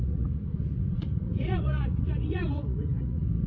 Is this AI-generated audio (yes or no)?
yes